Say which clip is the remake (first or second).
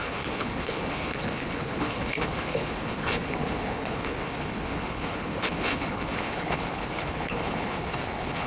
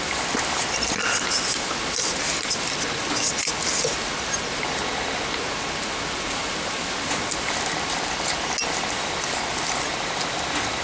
first